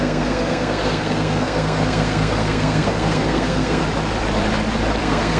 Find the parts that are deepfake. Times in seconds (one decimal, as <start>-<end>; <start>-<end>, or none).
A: 0.0-3.8; 5.0-5.4